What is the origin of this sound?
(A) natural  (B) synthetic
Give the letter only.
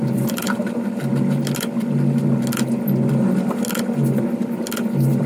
A